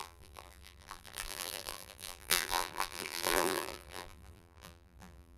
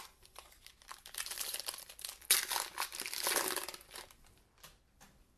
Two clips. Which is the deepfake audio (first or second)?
first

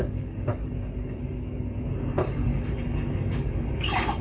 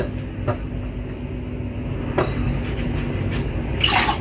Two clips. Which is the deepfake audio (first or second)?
first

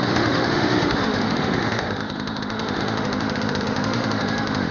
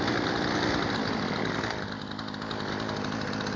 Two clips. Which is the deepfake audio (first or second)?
first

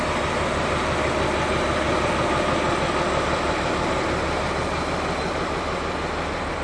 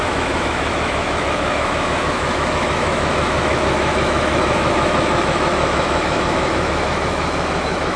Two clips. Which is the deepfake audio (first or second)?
second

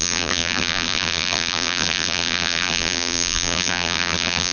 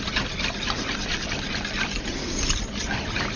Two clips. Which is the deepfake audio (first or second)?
first